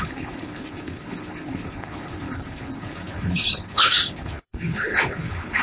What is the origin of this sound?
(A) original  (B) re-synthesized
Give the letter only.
B